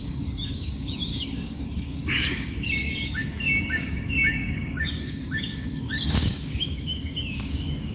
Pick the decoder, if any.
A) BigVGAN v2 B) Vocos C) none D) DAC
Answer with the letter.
D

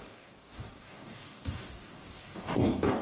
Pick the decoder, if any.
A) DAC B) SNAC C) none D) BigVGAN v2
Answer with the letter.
A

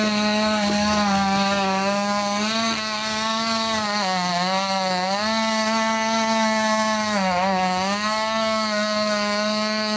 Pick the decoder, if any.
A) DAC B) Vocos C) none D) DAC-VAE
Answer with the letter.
A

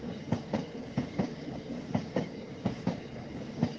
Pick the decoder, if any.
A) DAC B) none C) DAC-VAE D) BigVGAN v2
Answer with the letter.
A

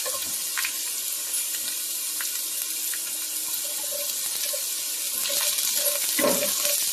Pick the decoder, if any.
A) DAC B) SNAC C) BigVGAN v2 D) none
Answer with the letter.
D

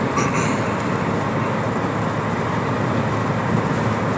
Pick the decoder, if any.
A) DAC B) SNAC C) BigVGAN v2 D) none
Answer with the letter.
D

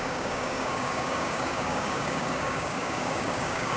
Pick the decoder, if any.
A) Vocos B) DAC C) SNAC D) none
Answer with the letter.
B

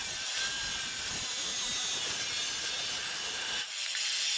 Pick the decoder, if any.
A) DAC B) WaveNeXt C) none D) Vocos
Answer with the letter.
C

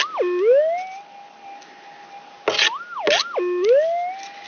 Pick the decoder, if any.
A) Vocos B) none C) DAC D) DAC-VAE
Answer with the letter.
B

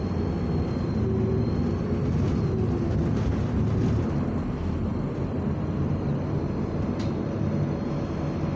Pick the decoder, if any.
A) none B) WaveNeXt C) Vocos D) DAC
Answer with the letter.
A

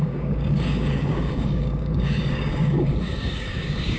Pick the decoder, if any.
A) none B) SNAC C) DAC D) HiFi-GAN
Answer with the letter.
C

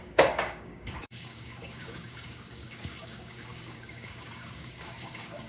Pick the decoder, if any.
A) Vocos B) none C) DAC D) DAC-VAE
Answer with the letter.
C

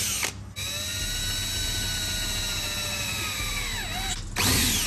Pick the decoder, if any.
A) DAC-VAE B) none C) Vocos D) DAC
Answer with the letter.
B